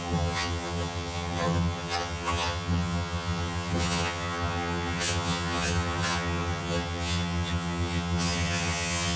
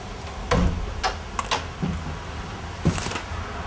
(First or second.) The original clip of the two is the second